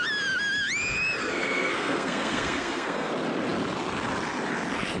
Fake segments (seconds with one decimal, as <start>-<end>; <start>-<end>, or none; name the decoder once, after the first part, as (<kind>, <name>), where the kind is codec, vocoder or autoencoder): 1.2-3.1 (codec, SNAC)